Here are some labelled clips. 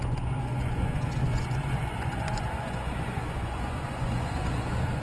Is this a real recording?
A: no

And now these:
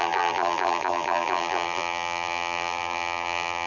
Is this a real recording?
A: no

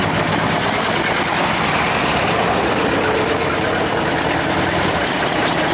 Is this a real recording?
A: yes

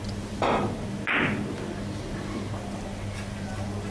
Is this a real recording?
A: yes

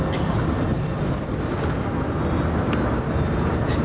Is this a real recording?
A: yes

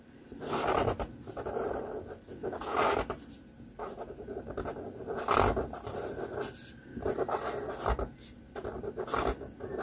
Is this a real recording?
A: yes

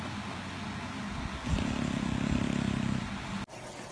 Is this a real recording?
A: yes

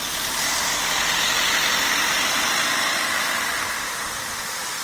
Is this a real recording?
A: yes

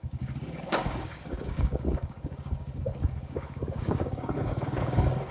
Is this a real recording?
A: no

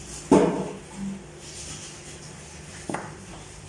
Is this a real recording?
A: yes